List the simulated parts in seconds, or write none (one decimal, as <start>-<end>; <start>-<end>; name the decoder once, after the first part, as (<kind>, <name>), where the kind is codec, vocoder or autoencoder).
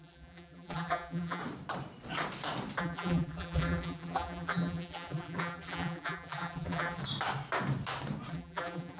0.0-1.4 (vocoder, BigVGAN v2); 2.8-7.0; 8.3-9.0